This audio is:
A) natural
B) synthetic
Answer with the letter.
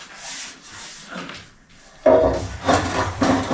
B